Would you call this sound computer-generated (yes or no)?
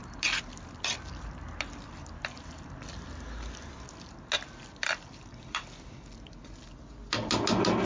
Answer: no